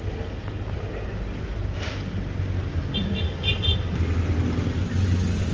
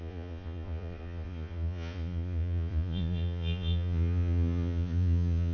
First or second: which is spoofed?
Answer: second